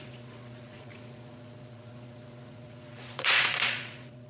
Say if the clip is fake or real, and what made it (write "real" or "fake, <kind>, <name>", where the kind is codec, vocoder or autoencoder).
fake, vocoder, Vocos